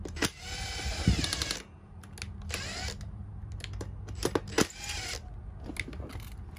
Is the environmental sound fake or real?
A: real